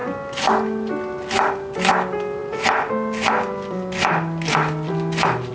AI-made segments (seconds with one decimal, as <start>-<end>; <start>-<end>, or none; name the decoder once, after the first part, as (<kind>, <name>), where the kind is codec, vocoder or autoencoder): none

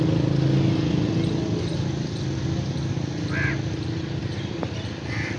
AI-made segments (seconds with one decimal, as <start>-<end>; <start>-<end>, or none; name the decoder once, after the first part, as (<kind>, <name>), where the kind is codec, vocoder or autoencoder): none

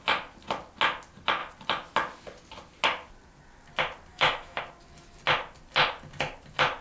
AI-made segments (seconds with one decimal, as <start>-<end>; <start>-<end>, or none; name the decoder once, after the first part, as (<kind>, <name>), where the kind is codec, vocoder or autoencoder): 4.1-4.6 (autoencoder, DAC-VAE)

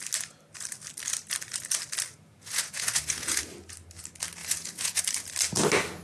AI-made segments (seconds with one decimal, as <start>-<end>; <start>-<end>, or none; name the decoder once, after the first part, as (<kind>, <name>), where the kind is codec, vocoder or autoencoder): 2.1-3.4 (vocoder, Vocos); 4.4-5.0